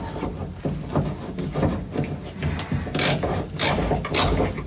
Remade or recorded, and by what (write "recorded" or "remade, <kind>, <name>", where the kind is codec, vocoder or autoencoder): recorded